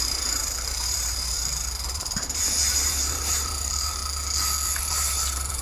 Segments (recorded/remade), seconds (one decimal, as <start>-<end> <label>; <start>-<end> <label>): 0.0-4.0 remade; 4.0-4.8 recorded; 4.8-5.6 remade